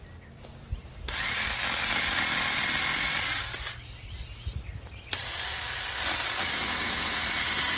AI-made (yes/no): no